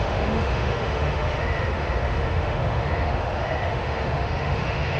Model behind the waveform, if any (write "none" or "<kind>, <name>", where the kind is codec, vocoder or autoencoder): autoencoder, DAC-VAE